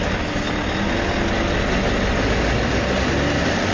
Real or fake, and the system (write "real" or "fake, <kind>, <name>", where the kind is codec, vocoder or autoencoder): real